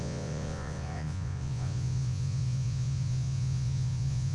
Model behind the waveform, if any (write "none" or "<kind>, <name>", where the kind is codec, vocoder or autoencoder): vocoder, Vocos